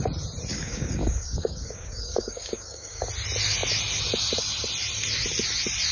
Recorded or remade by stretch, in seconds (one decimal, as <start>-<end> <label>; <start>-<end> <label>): 0.0-0.5 recorded; 0.5-3.1 remade; 3.1-5.9 recorded

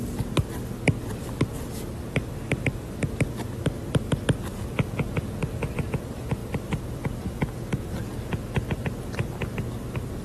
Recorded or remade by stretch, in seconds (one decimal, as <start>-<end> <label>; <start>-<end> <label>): 0.0-10.2 recorded

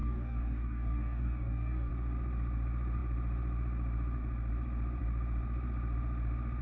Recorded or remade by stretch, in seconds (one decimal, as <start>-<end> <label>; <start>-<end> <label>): 0.0-1.9 remade; 1.9-6.6 recorded

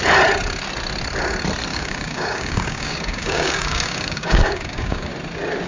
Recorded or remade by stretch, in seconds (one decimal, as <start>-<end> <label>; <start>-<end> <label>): 0.0-1.7 recorded; 1.7-5.1 remade; 5.1-5.7 recorded

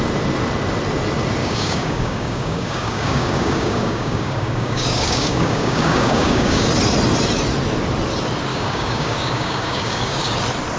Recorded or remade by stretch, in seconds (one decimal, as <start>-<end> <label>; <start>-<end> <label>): 0.0-1.4 recorded; 1.4-6.7 remade; 6.7-8.5 recorded; 8.5-10.3 remade; 10.3-10.8 recorded

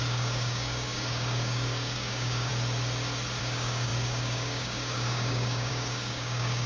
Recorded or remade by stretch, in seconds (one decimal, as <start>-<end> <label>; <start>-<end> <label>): 0.0-2.5 remade; 2.5-3.4 recorded; 3.4-6.7 remade